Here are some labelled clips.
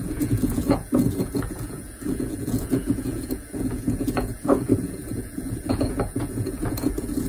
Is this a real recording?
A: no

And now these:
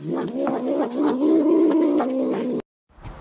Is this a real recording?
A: yes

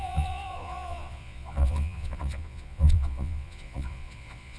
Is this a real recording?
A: no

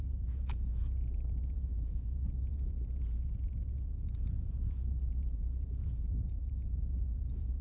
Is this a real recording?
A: no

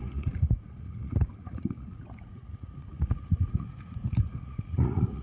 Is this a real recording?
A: no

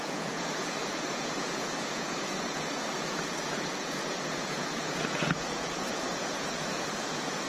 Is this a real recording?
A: no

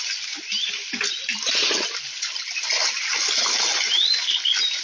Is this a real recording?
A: yes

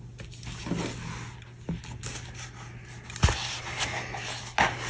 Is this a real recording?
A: yes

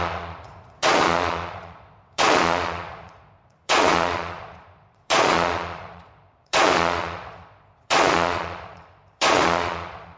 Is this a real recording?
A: no